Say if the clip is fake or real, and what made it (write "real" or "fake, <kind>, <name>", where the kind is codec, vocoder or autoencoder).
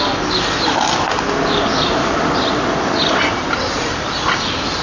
real